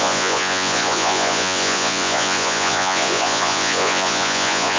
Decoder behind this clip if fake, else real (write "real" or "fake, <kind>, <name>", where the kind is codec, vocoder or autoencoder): fake, vocoder, Vocos